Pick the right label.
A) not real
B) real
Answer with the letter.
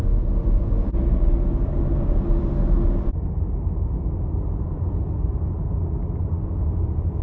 B